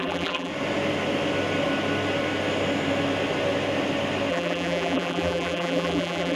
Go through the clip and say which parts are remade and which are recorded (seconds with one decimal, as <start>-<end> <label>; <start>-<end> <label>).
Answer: 0.0-0.5 remade; 0.5-4.3 recorded; 4.3-6.4 remade